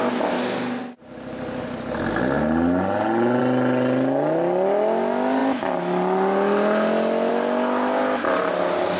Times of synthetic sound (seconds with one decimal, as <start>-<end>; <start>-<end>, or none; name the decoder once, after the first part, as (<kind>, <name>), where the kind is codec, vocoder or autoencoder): none